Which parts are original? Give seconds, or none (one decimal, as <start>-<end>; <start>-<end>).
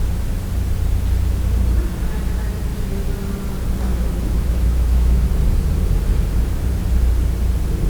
0.0-3.9; 5.2-7.9